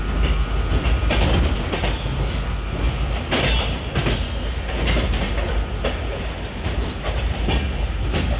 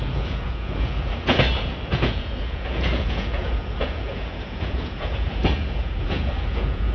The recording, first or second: first